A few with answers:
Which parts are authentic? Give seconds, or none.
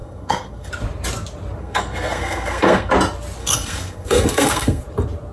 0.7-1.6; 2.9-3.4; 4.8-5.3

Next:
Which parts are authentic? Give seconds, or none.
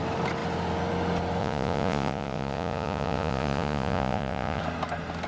0.0-1.4; 4.6-5.3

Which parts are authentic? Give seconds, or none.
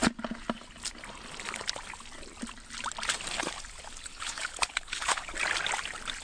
0.0-4.1; 5.3-6.2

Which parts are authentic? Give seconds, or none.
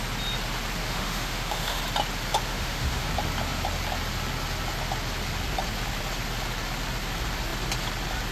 0.0-0.8; 1.8-2.5; 3.1-8.3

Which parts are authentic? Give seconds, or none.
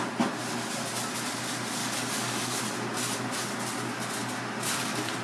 0.0-1.8; 2.6-5.2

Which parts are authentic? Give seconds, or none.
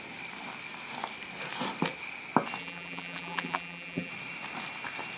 0.0-2.6; 4.1-5.2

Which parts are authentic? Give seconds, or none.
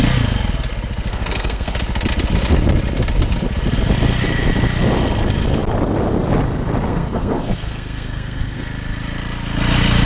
0.0-1.1; 1.8-6.9; 8.6-10.1